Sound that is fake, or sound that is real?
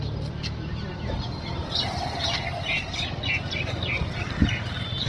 real